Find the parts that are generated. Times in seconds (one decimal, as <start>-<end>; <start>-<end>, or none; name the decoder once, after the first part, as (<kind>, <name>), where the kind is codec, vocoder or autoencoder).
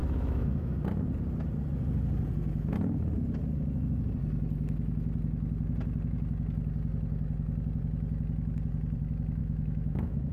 0.0-0.7 (autoencoder, DAC-VAE); 9.4-10.3